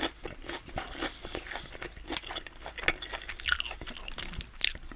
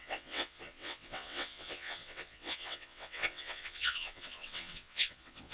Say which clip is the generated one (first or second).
second